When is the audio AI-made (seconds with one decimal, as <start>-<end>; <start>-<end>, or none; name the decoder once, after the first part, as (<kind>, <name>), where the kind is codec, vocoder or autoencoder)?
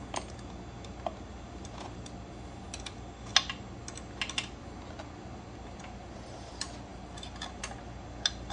none